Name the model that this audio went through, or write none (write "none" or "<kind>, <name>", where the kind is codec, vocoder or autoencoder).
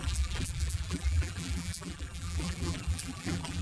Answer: vocoder, BigVGAN v2